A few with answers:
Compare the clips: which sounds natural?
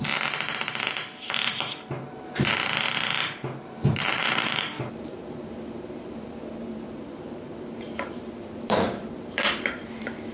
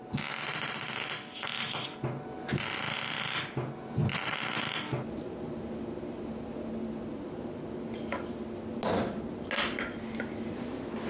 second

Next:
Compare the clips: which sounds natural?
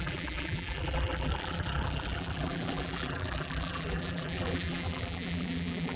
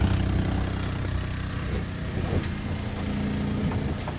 second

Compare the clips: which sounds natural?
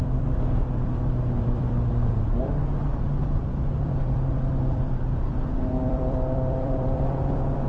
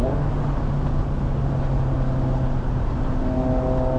second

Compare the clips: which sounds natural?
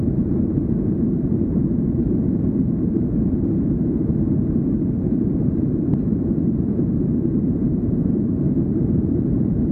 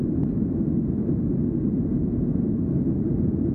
second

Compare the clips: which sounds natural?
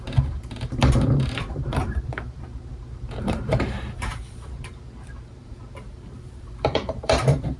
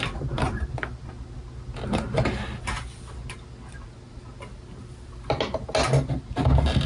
second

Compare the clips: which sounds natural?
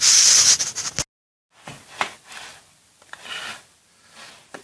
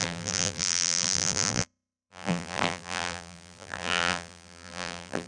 first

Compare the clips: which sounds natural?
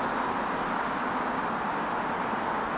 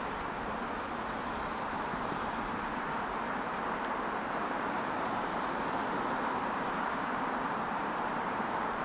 first